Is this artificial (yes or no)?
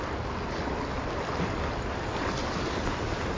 no